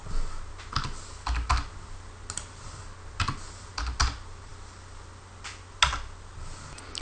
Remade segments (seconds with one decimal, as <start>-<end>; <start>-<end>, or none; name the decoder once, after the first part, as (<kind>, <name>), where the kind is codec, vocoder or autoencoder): none